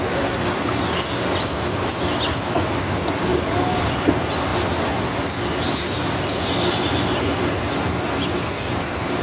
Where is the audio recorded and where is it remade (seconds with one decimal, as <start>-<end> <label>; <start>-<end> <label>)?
0.0-3.3 recorded; 3.3-3.9 remade; 3.9-9.2 recorded